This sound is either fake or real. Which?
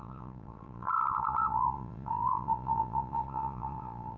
fake